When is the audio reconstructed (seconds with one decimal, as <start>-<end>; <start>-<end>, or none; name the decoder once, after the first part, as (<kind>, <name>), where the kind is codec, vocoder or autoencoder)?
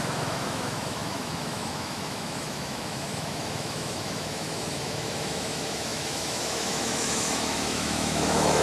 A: 0.0-8.6 (autoencoder, DAC-VAE)